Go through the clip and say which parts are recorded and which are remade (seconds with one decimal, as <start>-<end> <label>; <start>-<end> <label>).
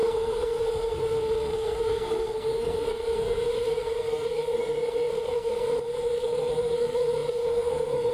0.0-8.1 remade